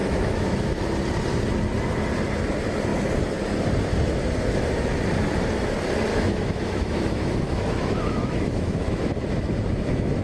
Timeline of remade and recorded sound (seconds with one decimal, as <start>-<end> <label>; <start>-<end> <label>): 0.0-0.8 remade; 0.8-6.1 recorded; 6.1-10.2 remade